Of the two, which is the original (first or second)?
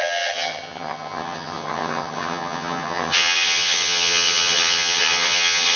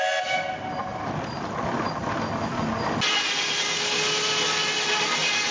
second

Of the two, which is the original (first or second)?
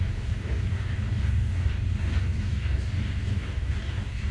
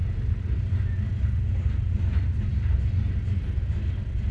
second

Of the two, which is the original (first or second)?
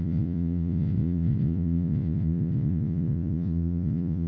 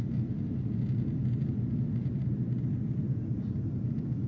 second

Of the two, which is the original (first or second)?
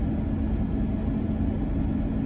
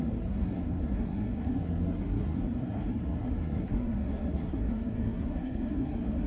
first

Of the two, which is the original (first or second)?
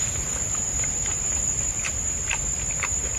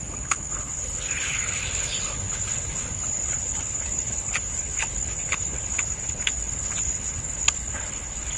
first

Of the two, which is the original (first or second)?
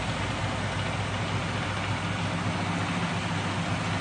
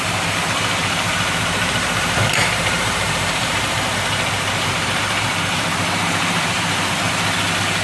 first